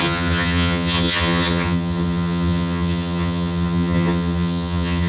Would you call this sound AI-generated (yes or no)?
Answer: yes